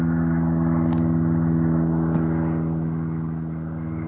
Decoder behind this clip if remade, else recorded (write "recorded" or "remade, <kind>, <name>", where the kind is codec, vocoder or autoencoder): recorded